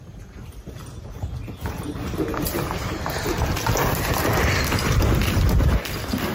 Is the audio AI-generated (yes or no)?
no